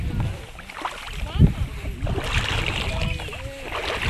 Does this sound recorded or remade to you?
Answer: recorded